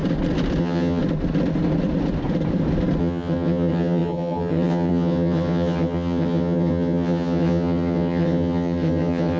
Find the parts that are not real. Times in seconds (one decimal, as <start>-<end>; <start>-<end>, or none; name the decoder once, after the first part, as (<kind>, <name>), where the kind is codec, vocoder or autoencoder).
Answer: 0.6-1.0 (vocoder, HiFi-GAN); 3.0-9.4